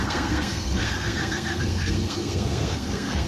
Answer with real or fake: fake